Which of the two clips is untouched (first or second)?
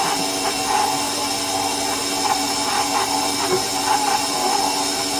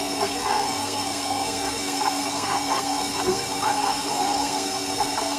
first